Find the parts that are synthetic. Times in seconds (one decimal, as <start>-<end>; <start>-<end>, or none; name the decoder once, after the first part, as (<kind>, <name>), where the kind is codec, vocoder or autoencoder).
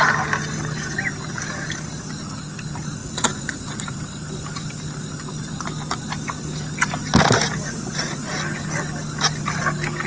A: 3.0-3.7 (vocoder, Vocos); 7.6-8.3